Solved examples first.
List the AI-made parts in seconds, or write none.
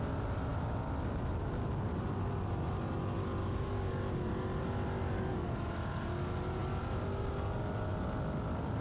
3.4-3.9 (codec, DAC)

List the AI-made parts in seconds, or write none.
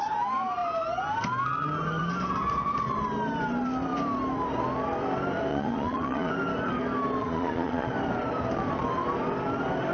5.5-6.3 (vocoder, Vocos); 7.2-7.9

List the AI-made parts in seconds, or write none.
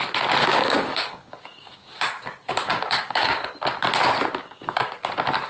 0.4-3.5 (codec, DAC); 4.4-4.9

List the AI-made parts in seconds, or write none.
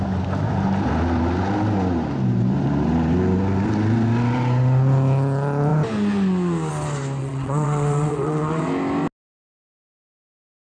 7.2-8.6 (vocoder, WaveNeXt)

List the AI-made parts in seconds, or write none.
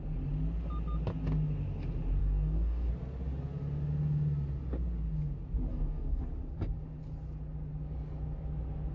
2.2-2.9 (codec, DAC); 5.7-6.2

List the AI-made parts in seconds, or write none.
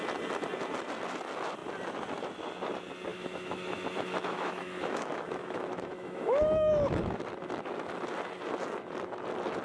3.1-7.2 (autoencoder, DAC-VAE)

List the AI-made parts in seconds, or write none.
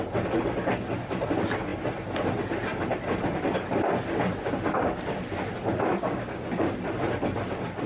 5.9-6.7 (codec, DAC)